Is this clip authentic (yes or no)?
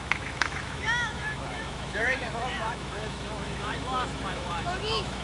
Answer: no